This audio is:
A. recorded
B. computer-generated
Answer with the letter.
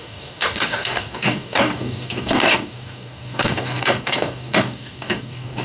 B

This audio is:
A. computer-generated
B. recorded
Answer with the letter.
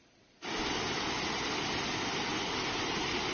B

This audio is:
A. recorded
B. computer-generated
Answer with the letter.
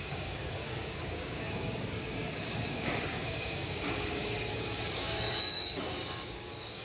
B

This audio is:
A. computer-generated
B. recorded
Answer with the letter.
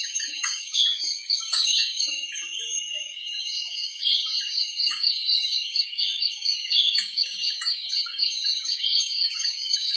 A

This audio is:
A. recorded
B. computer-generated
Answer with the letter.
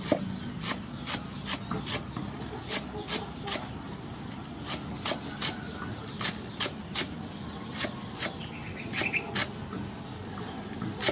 A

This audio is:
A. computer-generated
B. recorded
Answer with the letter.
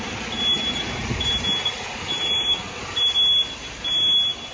B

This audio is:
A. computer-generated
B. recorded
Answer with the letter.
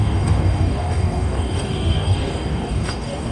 A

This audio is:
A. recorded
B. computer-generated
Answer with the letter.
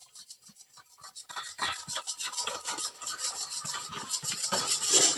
A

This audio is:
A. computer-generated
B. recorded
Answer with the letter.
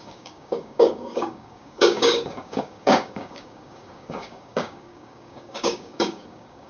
A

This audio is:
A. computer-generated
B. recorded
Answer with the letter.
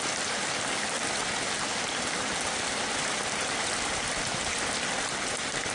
B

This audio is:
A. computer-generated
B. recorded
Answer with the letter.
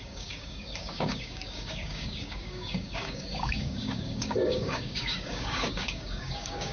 A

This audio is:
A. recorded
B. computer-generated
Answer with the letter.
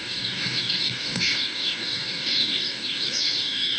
B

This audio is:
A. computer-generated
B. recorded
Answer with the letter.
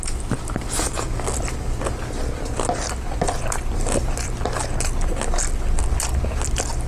B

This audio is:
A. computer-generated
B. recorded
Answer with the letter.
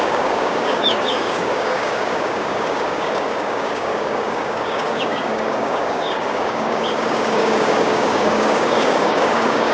A